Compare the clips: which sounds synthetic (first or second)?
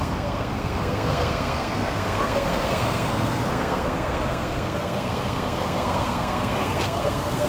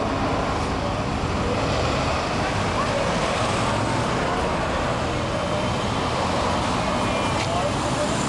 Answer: first